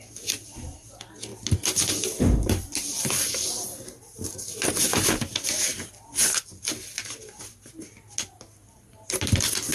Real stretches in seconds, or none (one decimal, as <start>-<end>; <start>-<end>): 0.0-5.7; 6.6-9.7